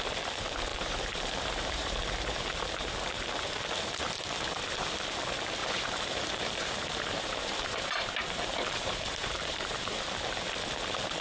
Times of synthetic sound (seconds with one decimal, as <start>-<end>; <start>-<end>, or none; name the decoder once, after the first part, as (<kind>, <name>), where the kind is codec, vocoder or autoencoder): 0.7-1.9 (vocoder, BigVGAN v2); 5.6-10.0